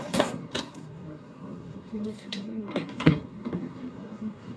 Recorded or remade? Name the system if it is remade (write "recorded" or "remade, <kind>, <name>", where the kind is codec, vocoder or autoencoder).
remade, codec, SNAC